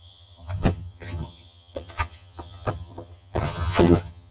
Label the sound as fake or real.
fake